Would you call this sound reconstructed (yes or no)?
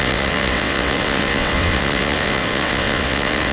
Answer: yes